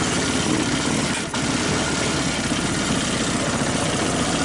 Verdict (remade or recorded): recorded